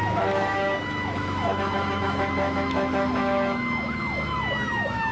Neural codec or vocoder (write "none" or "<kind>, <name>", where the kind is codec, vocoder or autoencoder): autoencoder, DAC-VAE